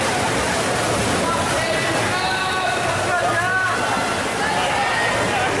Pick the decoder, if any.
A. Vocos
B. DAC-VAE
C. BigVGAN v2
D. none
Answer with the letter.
D